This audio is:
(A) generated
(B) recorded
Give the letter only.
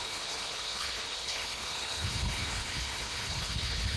A